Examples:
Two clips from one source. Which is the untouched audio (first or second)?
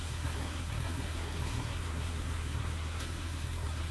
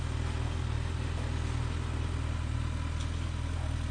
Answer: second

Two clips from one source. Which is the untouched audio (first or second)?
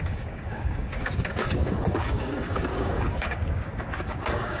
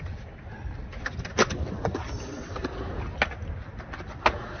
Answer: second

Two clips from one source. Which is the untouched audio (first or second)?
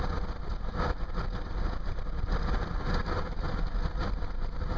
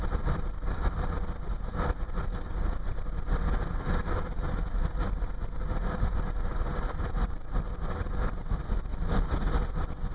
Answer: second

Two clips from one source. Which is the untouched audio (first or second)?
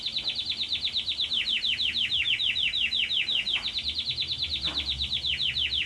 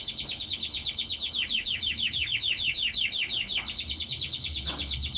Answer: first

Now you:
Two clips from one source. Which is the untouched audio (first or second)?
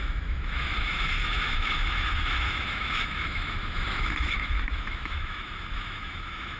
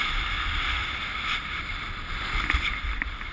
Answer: second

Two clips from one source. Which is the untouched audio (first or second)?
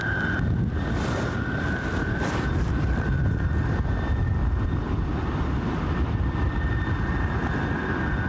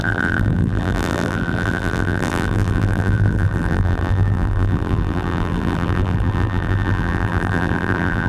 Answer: first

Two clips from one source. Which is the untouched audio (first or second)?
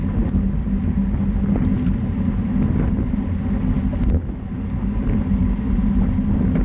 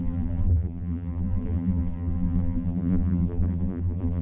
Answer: first